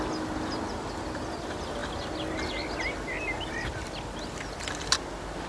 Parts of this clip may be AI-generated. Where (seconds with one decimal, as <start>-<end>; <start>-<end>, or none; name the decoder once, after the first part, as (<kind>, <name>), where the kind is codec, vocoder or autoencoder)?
none